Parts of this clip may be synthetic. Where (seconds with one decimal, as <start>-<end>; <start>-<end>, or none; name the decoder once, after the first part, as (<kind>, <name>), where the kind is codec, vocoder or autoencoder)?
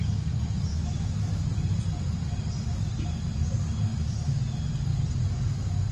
0.7-1.4 (autoencoder, DAC-VAE); 3.9-4.4